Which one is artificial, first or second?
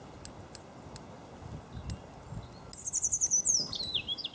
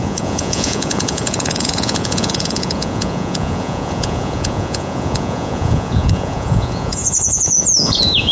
second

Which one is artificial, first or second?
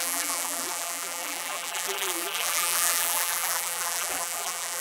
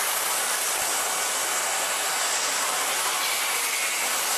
first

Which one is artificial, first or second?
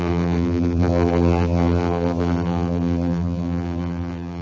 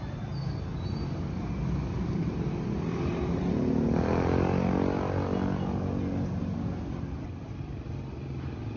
first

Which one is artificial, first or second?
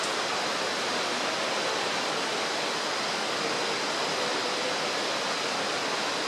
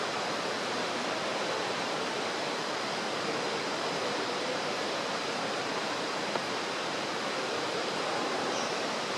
second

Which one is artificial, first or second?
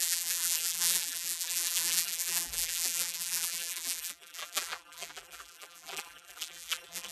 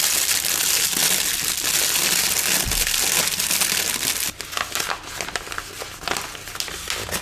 first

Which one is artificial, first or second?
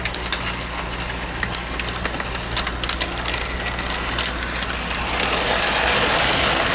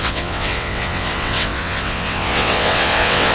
second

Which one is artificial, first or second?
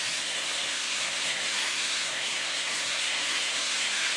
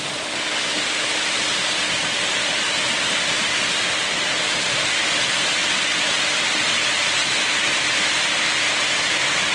first